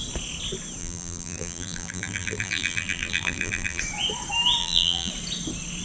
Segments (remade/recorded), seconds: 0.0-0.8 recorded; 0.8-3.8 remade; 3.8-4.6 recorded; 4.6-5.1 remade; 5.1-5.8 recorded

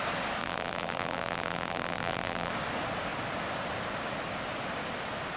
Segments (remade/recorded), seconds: 0.0-0.4 recorded; 0.4-2.5 remade; 2.5-5.4 recorded

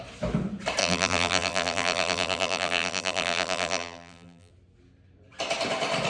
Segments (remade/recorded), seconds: 0.0-0.8 recorded; 0.8-4.5 remade; 4.5-6.1 recorded

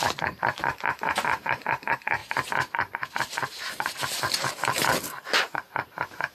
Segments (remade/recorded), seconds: 0.0-6.3 remade